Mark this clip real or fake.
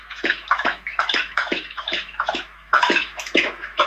fake